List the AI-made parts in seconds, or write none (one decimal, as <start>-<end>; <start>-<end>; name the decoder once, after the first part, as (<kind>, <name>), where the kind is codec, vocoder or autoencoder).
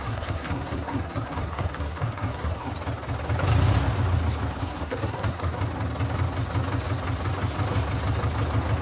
0.0-2.7 (codec, SNAC); 4.6-5.6